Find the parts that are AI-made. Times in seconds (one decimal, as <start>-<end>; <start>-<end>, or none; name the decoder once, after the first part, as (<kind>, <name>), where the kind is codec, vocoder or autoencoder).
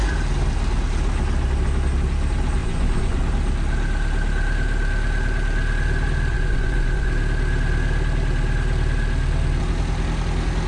2.6-3.2 (vocoder, Vocos); 6.3-7.1